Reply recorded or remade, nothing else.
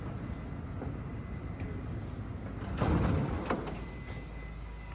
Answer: recorded